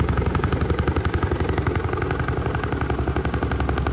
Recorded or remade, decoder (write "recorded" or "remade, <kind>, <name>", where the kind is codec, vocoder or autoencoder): recorded